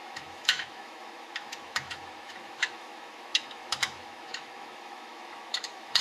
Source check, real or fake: fake